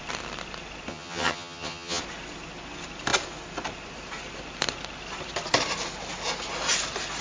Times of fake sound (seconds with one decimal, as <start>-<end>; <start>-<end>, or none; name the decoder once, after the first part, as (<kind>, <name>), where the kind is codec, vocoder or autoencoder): 0.9-2.0 (vocoder, HiFi-GAN)